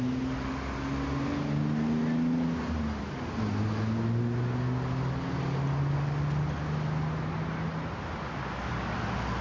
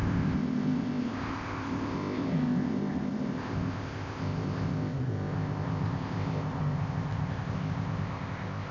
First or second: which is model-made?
second